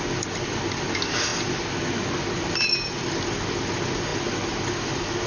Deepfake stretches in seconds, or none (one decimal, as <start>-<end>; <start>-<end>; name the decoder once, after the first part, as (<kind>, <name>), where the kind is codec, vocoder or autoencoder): none